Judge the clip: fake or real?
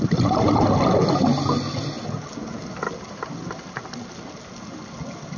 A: real